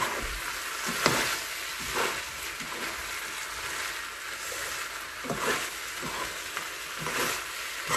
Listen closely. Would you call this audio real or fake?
real